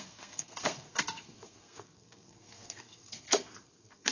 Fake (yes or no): yes